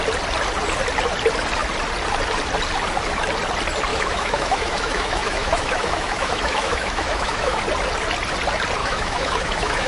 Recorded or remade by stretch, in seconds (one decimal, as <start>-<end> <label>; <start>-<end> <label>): 0.0-3.9 recorded; 3.9-7.6 remade; 7.6-8.8 recorded; 8.8-9.9 remade